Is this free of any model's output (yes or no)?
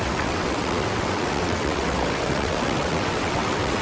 no